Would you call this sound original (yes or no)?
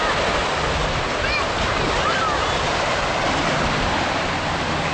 yes